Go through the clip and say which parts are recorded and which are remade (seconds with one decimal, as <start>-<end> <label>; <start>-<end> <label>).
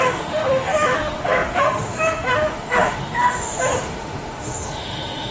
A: 0.0-5.3 remade